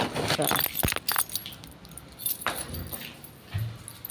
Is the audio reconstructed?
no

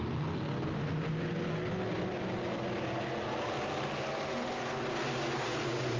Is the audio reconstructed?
no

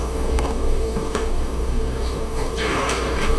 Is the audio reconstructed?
yes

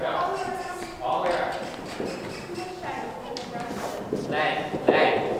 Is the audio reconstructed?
no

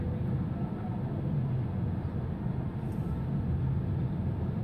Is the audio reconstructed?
no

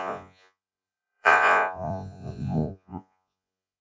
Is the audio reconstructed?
yes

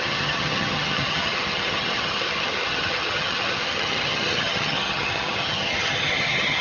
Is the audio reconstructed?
yes